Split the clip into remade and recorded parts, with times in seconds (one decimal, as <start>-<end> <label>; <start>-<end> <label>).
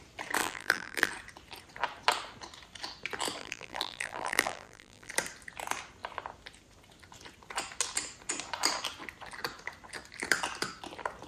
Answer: 0.0-0.4 recorded; 0.4-1.1 remade; 1.1-3.4 recorded; 3.4-5.1 remade; 5.1-11.3 recorded